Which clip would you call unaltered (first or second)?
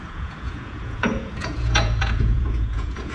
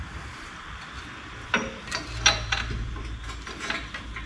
second